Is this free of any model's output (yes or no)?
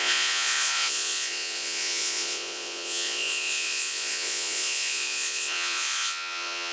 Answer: no